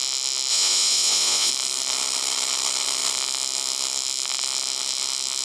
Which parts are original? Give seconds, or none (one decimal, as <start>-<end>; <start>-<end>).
0.0-0.5; 1.5-5.4